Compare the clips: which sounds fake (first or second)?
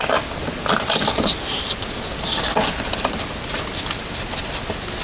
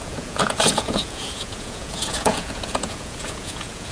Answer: second